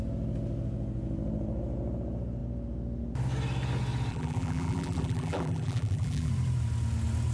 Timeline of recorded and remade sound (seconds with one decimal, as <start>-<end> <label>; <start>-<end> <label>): 0.0-4.1 recorded; 4.1-6.3 remade; 6.3-7.3 recorded